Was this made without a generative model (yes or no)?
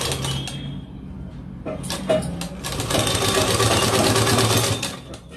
yes